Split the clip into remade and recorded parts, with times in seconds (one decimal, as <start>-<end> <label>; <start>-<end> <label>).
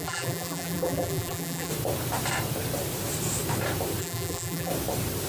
0.0-1.7 remade; 1.7-4.0 recorded; 4.0-4.7 remade; 4.7-5.3 recorded